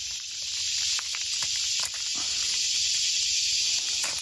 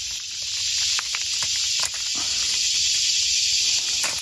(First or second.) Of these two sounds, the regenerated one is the first